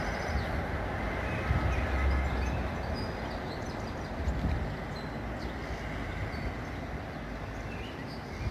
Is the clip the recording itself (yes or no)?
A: yes